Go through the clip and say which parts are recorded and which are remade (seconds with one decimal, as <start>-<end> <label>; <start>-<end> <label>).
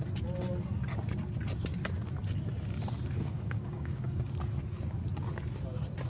0.0-3.3 recorded; 3.3-4.2 remade; 4.2-6.1 recorded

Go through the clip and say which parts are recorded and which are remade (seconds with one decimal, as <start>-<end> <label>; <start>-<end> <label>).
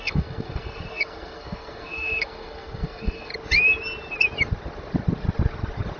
0.0-3.3 remade; 3.3-6.0 recorded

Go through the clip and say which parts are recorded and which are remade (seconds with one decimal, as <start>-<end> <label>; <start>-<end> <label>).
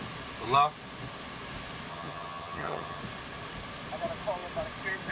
0.0-1.9 recorded; 1.9-3.0 remade; 3.0-5.1 recorded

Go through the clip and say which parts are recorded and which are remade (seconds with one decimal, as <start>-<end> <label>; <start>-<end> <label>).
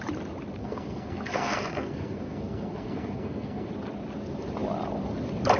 0.0-0.6 recorded; 0.6-3.7 remade; 3.7-5.6 recorded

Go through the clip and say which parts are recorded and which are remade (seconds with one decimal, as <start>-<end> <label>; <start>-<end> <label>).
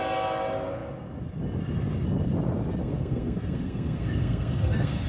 0.0-2.8 recorded; 2.8-5.1 remade